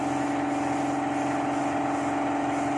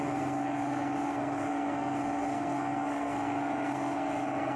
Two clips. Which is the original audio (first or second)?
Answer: first